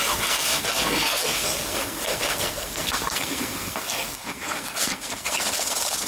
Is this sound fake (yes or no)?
yes